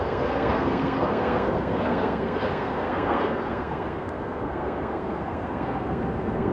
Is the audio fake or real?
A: fake